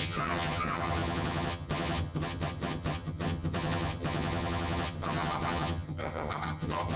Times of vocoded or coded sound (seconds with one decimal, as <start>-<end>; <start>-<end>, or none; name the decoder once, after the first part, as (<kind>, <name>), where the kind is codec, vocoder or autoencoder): 0.0-7.0 (vocoder, HiFi-GAN)